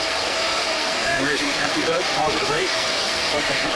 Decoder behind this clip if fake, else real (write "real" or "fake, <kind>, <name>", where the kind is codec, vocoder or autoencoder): fake, codec, SNAC